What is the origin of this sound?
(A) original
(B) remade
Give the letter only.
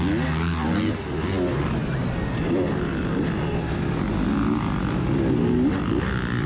A